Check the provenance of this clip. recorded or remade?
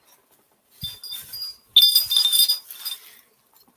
recorded